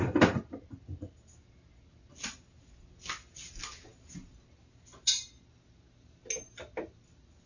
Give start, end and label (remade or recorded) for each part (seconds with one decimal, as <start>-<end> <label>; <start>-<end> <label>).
0.0-7.5 recorded